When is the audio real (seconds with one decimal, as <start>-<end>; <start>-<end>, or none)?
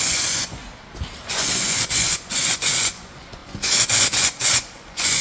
0.6-1.2